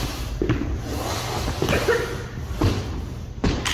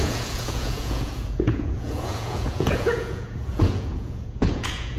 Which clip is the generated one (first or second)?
second